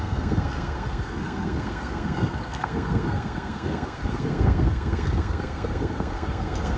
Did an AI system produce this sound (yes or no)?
yes